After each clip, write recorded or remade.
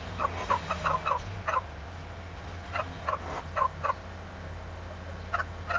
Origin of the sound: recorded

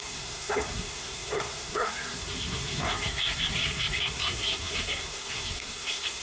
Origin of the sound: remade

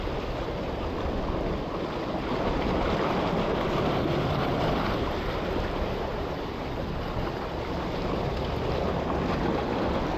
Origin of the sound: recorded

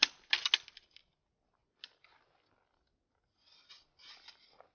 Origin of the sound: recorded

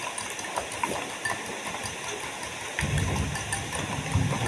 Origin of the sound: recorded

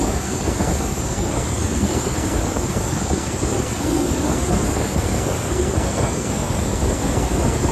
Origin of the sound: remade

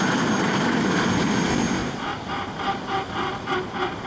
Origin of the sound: recorded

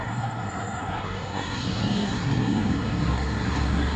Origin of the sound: remade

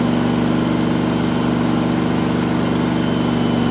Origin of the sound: recorded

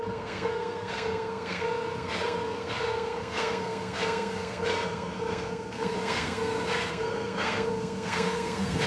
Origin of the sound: remade